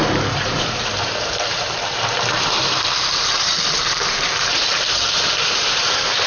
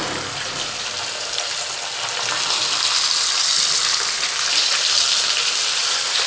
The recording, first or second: second